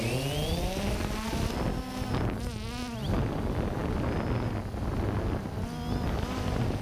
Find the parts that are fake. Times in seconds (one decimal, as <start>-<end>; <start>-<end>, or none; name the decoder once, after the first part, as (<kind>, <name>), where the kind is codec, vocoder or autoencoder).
none